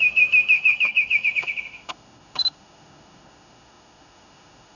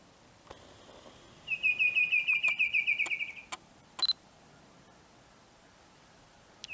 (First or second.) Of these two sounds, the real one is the second